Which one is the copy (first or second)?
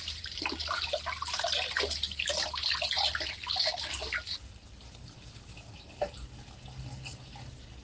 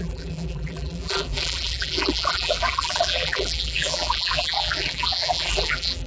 second